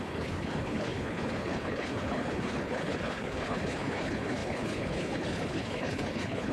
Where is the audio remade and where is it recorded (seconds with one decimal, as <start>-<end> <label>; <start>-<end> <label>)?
0.0-6.5 remade